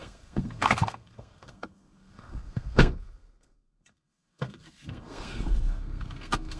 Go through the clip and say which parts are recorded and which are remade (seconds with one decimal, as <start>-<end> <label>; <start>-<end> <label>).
0.0-6.6 remade